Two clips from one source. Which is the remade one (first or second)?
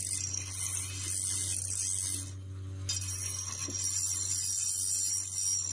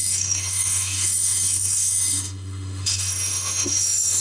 second